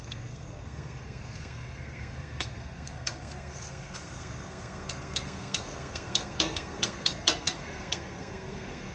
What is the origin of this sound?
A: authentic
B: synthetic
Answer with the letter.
B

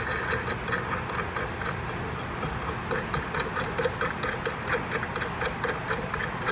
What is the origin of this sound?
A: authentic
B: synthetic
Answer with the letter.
A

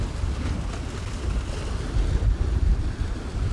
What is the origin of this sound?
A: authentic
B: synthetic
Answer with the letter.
A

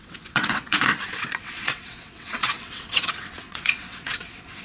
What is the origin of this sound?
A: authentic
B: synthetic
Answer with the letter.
B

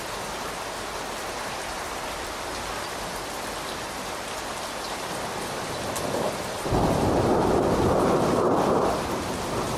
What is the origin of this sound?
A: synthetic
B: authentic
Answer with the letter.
B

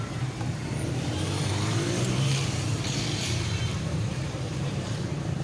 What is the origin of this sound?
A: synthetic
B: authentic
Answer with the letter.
A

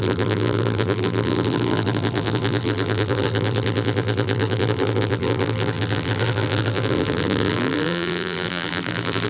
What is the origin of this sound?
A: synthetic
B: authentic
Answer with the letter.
A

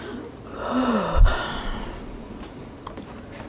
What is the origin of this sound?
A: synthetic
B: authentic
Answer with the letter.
B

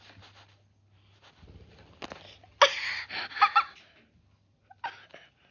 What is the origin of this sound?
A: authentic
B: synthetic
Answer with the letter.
A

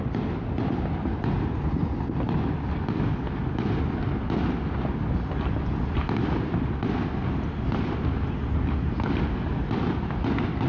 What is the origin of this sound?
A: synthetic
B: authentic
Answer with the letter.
B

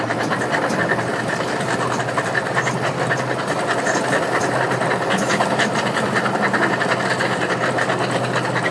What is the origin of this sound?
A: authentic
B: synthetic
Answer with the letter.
A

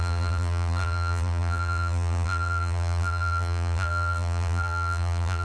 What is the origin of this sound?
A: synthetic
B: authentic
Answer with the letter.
A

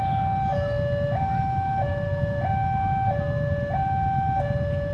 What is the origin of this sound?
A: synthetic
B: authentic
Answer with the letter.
B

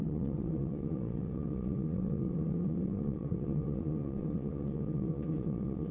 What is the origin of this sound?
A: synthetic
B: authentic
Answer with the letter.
A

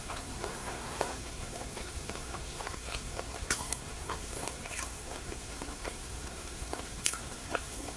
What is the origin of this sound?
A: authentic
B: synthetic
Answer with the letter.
B